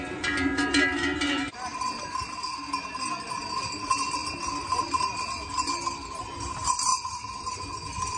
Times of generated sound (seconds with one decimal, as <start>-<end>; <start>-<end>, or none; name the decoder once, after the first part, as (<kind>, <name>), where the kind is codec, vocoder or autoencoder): none